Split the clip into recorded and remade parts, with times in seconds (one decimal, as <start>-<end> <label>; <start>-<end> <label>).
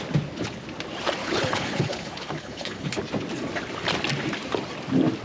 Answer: 0.0-1.2 recorded; 1.2-3.0 remade; 3.0-5.2 recorded